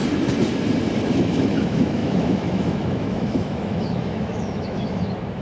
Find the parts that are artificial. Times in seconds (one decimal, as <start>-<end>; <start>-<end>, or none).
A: 1.1-5.4